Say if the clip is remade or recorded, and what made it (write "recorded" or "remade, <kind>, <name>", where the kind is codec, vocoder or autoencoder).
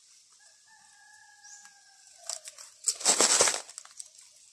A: recorded